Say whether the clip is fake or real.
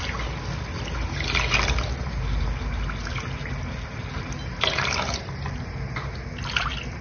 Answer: real